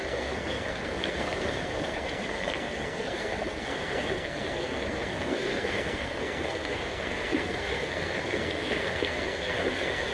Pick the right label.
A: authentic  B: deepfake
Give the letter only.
B